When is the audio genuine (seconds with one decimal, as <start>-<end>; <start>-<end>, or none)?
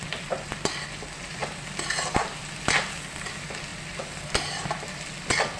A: 0.0-5.6